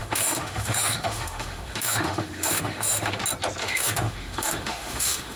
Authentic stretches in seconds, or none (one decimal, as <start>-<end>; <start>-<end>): 3.2-3.6